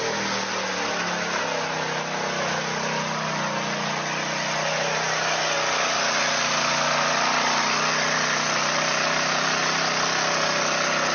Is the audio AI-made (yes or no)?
no